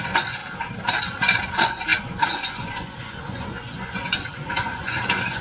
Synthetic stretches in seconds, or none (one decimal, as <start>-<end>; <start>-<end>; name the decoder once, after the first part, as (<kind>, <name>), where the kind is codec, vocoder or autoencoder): 0.0-0.4 (vocoder, Vocos); 1.0-5.4